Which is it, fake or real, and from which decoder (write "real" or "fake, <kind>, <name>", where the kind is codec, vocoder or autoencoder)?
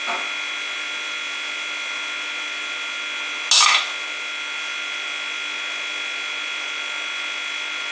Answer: real